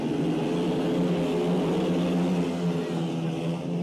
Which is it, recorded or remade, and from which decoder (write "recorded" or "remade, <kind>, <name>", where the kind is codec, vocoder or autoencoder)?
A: recorded